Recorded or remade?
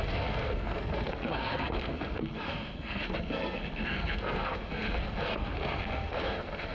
remade